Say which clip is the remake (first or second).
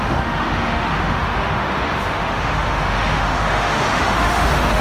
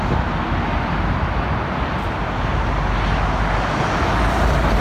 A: first